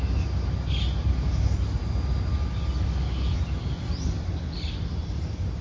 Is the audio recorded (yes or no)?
yes